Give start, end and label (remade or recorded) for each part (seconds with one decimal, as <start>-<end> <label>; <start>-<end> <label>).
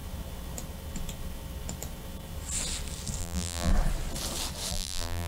0.0-3.2 recorded; 3.2-3.7 remade; 3.7-4.7 recorded; 4.7-5.3 remade